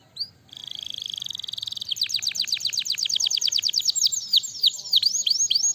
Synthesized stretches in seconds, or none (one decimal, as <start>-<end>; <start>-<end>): none